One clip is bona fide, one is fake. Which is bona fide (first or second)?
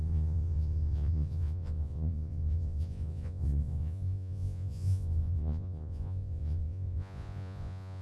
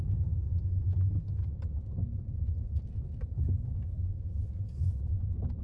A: second